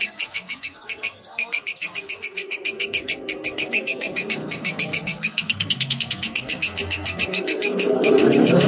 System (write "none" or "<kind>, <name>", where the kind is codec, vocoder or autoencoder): codec, SNAC